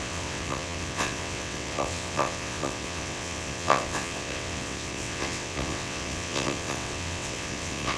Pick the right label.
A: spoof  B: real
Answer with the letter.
A